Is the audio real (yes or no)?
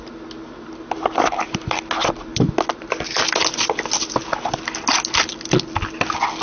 yes